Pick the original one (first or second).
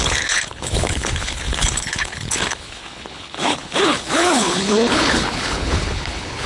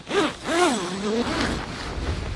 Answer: second